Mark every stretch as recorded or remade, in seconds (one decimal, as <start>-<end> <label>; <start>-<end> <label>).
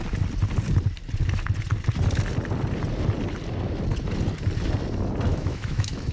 0.0-5.3 recorded; 5.3-6.1 remade